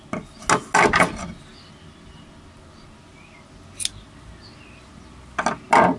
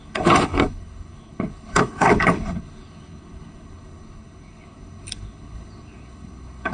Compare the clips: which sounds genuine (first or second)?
first